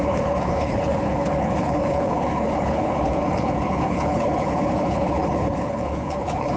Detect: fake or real fake